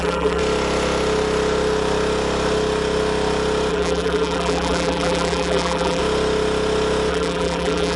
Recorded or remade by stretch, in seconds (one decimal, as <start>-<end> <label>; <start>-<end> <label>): 0.0-0.4 remade; 0.4-3.7 recorded; 3.7-6.0 remade; 6.0-7.1 recorded; 7.1-8.0 remade